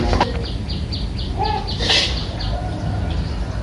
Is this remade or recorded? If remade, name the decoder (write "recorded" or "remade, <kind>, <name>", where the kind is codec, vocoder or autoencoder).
recorded